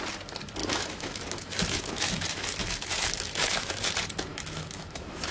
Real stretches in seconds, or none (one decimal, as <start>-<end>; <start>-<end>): 0.0-0.6; 3.8-4.3